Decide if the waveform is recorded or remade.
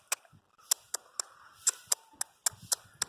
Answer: recorded